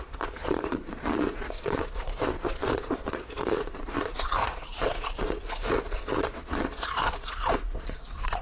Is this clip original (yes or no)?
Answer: no